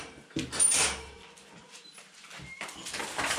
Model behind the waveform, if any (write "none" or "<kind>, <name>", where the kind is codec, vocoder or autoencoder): none